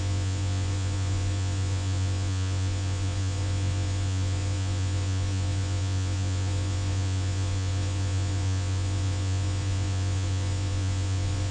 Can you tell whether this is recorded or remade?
remade